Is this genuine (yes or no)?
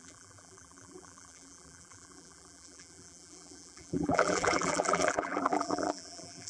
no